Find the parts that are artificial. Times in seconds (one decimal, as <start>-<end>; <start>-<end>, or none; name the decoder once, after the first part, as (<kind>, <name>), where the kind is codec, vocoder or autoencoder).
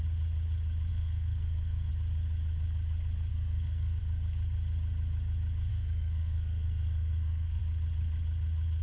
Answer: 0.9-1.9 (codec, SNAC); 3.3-4.0; 5.7-7.6